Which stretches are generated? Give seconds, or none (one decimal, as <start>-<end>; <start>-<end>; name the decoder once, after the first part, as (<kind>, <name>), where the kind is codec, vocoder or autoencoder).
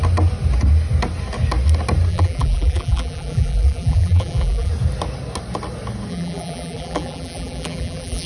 2.1-4.7 (vocoder, BigVGAN v2); 6.1-8.3